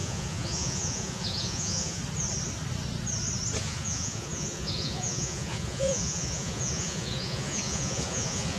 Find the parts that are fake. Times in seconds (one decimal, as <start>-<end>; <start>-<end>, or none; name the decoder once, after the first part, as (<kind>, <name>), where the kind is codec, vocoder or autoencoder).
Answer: 0.0-2.0 (vocoder, Vocos); 3.6-8.6